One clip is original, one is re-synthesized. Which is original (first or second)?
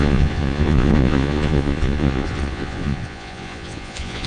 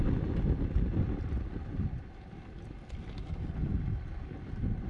second